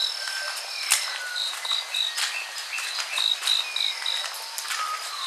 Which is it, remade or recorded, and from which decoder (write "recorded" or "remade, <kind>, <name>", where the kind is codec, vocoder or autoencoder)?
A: recorded